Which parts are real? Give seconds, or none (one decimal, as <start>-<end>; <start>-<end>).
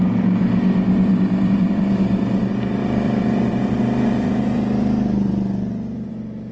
0.0-1.1; 2.0-2.8; 6.1-6.5